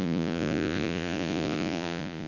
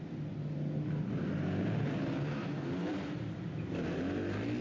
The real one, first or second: second